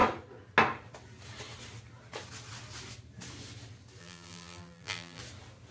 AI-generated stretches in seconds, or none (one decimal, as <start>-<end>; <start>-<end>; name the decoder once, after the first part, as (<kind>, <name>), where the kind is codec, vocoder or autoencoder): 4.0-5.2 (vocoder, BigVGAN v2)